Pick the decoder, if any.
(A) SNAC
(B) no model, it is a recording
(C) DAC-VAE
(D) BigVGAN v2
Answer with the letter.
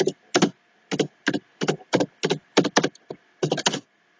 B